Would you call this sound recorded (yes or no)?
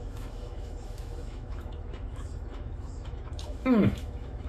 no